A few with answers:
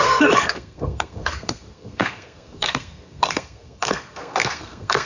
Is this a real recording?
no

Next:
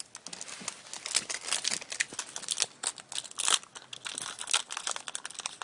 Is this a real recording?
yes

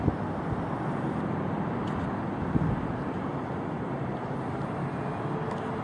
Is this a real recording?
yes